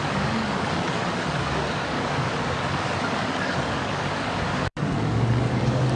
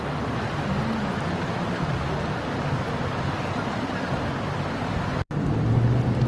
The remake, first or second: first